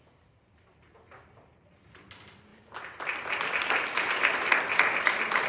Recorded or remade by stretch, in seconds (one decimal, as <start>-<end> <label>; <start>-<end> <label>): 0.0-5.5 recorded